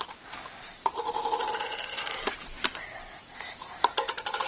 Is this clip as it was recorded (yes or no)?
no